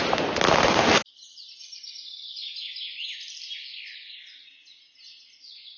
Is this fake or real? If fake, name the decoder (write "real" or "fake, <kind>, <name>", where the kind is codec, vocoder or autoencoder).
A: real